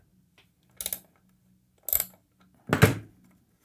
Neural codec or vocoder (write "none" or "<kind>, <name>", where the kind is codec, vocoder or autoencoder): none